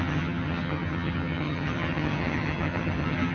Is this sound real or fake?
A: fake